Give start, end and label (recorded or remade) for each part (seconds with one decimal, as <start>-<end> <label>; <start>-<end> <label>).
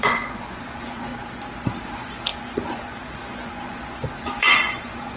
0.0-1.1 remade; 1.1-1.8 recorded; 1.8-5.2 remade